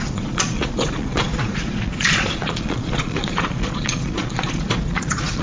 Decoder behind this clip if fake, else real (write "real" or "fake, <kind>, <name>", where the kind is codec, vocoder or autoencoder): fake, vocoder, Vocos